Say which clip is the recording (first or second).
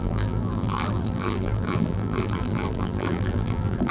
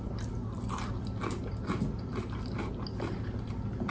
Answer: second